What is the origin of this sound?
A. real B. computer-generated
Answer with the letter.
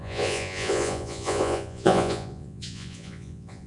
B